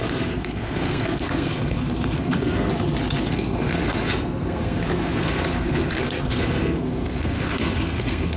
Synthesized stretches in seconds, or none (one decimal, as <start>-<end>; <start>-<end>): 0.0-2.7; 3.2-8.4